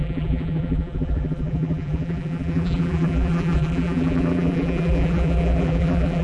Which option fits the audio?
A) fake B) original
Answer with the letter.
A